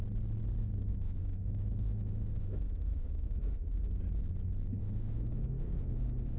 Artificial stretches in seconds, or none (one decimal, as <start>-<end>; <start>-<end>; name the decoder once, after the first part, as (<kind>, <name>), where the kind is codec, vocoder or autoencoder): 0.6-4.0 (autoencoder, DAC-VAE); 4.8-6.4

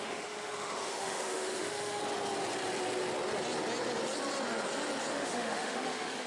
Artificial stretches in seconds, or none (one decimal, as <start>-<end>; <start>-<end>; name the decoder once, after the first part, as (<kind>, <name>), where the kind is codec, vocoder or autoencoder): 0.0-2.0 (autoencoder, DAC-VAE); 5.1-6.3

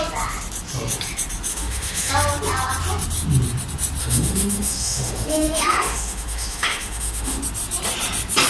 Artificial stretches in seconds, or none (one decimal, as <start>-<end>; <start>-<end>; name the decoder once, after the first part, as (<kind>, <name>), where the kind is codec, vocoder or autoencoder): 1.5-2.1 (autoencoder, DAC-VAE); 4.0-7.4

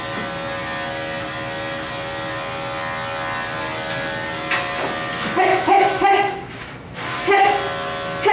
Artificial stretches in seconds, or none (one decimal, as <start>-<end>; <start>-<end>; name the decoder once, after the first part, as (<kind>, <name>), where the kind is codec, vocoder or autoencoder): 5.5-7.2 (autoencoder, DAC-VAE)

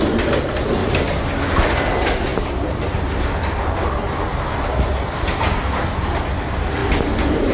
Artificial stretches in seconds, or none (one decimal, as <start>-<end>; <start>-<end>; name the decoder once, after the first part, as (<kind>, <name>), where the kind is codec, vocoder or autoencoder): none

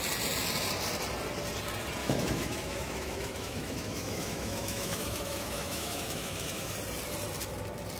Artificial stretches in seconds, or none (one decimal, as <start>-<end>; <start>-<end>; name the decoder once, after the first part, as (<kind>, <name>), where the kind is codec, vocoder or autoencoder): 2.0-6.7 (autoencoder, DAC-VAE)